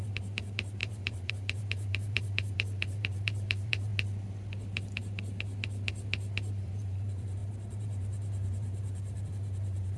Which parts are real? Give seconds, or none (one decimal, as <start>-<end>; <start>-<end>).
3.9-6.5